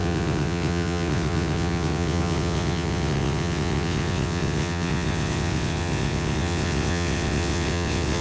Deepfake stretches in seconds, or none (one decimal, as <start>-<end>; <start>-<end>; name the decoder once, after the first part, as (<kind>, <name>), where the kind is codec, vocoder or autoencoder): 0.0-8.2 (vocoder, WaveNeXt)